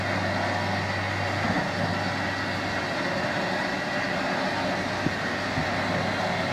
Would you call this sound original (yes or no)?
yes